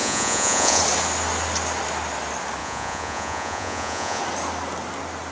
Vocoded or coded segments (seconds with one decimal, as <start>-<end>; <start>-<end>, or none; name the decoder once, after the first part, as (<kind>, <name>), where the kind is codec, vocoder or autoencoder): 0.0-0.8 (vocoder, Vocos); 2.6-4.2